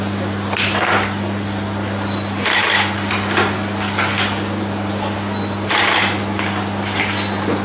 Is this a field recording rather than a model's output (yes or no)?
yes